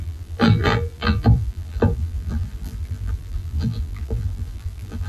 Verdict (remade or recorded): remade